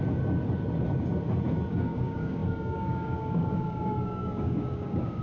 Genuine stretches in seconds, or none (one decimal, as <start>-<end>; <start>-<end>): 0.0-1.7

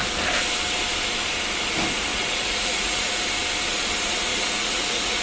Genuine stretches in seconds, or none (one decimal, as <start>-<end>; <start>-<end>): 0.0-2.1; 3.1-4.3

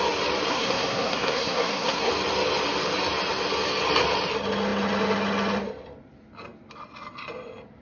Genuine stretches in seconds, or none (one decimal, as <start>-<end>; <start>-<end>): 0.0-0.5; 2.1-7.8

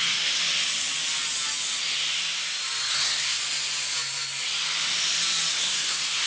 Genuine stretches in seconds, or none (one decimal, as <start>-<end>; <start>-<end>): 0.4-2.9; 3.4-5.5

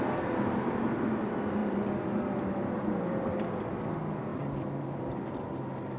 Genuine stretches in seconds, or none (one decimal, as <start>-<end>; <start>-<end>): 0.0-1.6; 3.7-4.3; 5.5-6.0

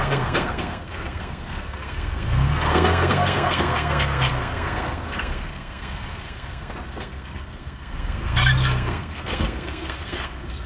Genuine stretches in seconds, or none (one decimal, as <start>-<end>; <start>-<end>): none